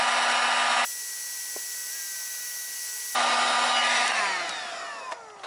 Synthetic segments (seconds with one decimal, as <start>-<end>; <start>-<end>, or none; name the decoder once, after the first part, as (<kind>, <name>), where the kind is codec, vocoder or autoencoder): none